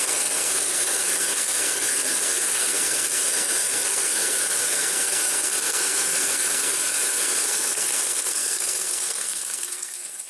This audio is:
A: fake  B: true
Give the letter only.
A